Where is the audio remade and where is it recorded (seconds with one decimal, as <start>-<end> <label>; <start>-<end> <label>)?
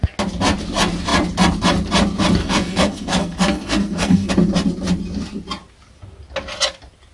0.0-2.4 recorded; 2.4-4.3 remade; 4.3-7.1 recorded